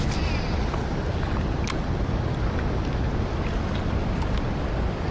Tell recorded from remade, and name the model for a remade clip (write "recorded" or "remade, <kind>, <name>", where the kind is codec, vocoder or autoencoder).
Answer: recorded